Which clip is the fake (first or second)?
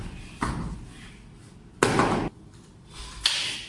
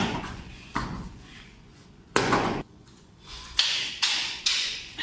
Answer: second